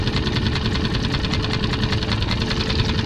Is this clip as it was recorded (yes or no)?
yes